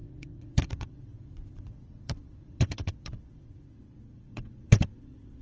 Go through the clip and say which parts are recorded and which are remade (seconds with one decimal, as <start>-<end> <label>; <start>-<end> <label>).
0.0-5.4 remade